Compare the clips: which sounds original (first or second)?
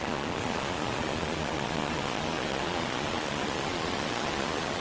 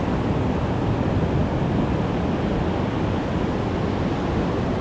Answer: second